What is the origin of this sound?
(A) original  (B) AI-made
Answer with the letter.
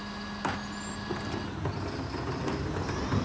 A